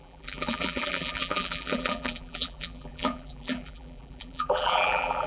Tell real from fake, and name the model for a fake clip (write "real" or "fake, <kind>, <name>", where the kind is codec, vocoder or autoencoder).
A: fake, vocoder, BigVGAN v2